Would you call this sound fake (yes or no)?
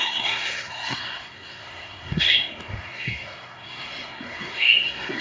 yes